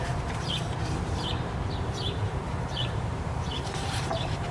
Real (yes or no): no